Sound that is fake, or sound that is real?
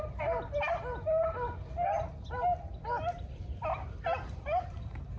real